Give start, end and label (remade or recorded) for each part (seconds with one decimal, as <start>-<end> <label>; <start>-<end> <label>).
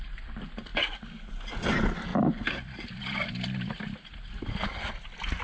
0.0-2.1 recorded; 2.1-3.0 remade; 3.0-5.4 recorded